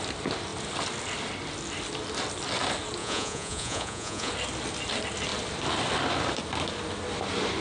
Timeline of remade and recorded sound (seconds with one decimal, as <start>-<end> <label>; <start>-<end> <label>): 0.0-3.0 recorded; 3.0-4.3 remade; 4.3-7.6 recorded